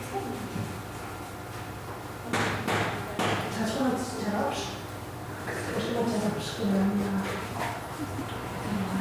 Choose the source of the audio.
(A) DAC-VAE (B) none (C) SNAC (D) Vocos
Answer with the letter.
B